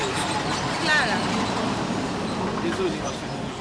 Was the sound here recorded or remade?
recorded